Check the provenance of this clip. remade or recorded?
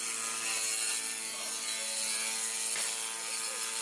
recorded